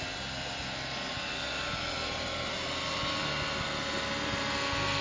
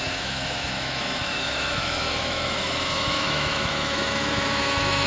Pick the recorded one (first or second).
first